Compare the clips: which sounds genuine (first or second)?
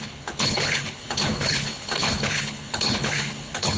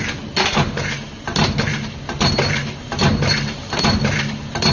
second